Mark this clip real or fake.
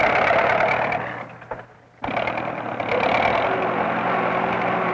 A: real